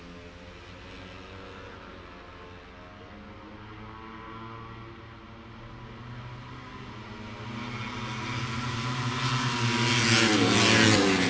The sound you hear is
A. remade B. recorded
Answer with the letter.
B